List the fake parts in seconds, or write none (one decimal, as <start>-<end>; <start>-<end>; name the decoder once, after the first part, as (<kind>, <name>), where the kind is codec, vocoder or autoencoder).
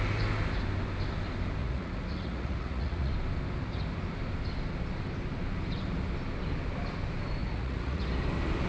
1.6-3.1 (vocoder, Vocos); 7.4-8.0